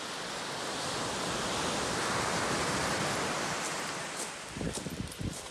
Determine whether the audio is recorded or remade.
recorded